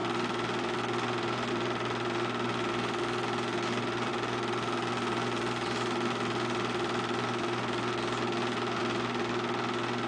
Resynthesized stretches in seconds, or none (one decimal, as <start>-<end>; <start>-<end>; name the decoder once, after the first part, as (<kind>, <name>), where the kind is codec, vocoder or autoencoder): none